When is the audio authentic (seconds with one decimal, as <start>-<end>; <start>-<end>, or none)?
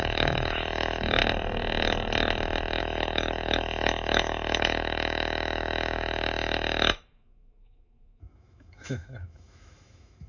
1.2-2.8